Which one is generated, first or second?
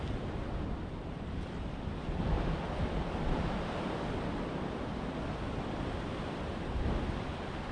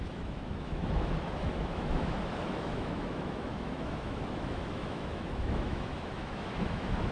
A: second